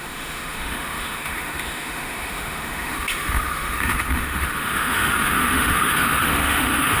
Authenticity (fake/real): fake